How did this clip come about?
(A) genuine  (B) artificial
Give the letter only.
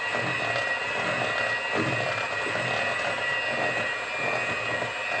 A